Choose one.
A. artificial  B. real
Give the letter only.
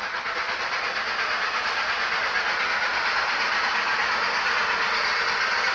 B